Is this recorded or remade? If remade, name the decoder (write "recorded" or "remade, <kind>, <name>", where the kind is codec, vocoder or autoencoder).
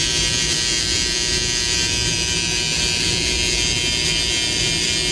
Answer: recorded